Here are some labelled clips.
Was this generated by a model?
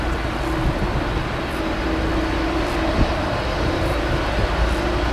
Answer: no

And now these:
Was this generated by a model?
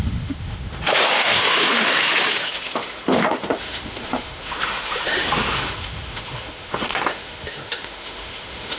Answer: yes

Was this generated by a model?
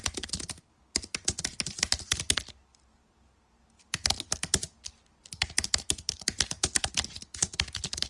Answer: no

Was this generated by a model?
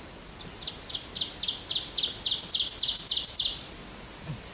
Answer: no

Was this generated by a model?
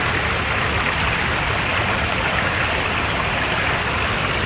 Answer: no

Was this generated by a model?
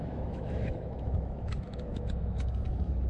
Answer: yes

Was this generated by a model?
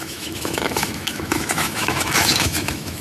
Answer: yes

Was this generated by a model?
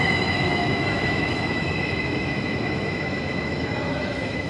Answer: yes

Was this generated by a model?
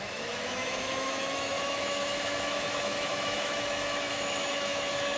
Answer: yes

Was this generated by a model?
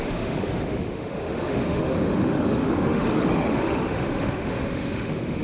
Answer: yes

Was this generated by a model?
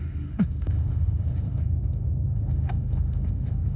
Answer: yes